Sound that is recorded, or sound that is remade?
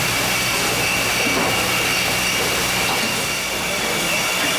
recorded